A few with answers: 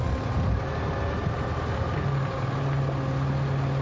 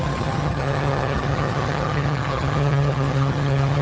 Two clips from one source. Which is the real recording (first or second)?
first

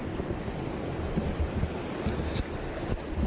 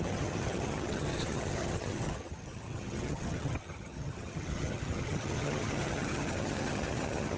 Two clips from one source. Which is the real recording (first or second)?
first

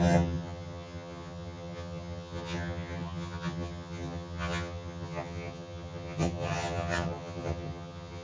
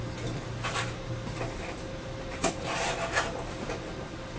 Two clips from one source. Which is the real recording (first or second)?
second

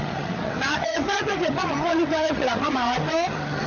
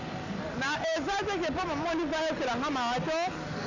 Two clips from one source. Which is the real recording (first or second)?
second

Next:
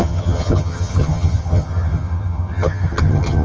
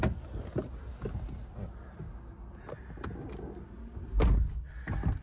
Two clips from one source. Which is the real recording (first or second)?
second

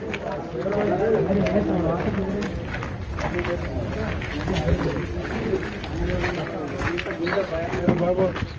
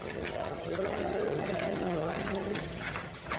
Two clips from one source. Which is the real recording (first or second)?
first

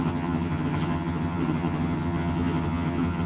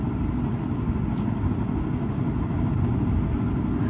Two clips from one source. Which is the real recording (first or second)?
second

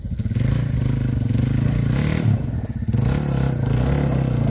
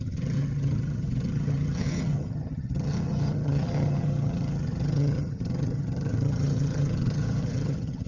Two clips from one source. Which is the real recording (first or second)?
first